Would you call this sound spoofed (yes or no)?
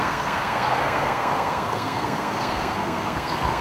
yes